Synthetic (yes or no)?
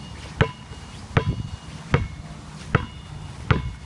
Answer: no